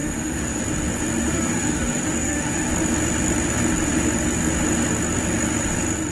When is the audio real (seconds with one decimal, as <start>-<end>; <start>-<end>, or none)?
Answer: 0.6-1.2; 2.7-6.1